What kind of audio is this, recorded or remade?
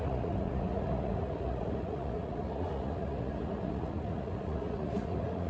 remade